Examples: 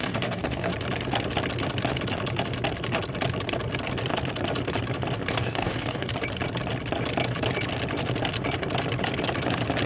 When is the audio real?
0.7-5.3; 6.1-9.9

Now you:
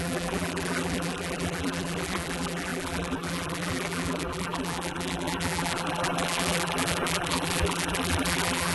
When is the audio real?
none

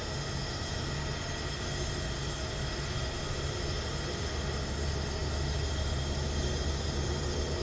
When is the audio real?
0.0-7.6

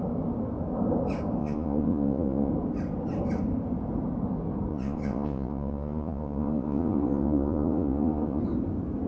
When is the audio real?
0.0-1.4; 2.5-4.7; 8.4-9.1

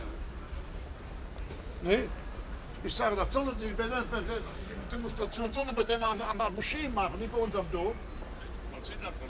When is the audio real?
0.0-4.5; 6.6-9.3